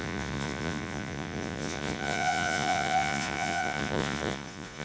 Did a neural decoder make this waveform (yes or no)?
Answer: yes